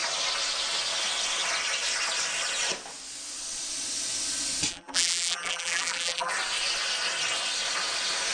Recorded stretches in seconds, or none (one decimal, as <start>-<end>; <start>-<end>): 0.0-4.7; 6.3-8.3